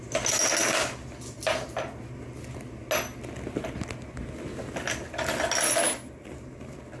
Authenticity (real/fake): real